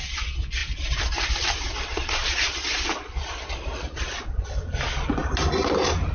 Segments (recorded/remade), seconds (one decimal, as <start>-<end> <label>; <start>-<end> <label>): 0.0-0.6 recorded; 0.6-4.3 remade; 4.3-6.1 recorded

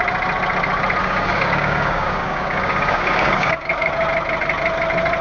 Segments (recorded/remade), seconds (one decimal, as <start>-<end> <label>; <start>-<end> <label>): 0.0-1.0 recorded; 1.0-3.9 remade; 3.9-5.2 recorded

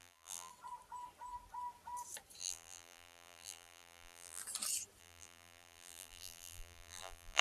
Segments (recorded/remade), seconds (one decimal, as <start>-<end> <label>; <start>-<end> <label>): 0.0-0.5 remade; 0.5-2.4 recorded; 2.4-4.4 remade; 4.4-5.0 recorded; 5.0-7.4 remade

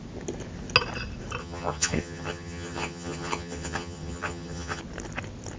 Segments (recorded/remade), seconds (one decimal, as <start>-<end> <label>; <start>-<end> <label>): 0.0-1.4 recorded; 1.4-4.8 remade; 4.8-5.6 recorded

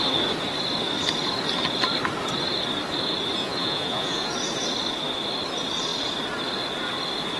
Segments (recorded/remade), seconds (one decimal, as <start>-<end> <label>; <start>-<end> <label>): 0.0-3.4 recorded; 3.4-4.3 remade; 4.3-7.4 recorded

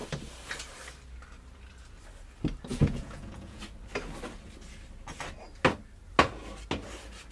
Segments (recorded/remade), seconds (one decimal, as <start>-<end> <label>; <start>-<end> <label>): 0.0-2.7 recorded; 2.7-3.6 remade; 3.6-7.3 recorded